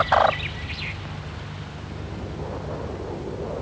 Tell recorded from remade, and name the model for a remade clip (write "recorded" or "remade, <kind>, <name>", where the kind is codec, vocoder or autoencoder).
recorded